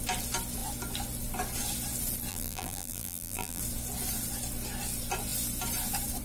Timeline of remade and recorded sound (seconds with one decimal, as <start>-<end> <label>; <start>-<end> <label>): 0.0-2.3 recorded; 2.3-3.6 remade; 3.6-6.2 recorded